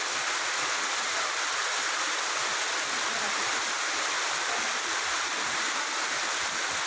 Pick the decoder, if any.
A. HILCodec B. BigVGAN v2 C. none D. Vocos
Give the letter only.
C